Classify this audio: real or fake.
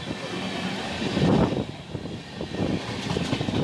real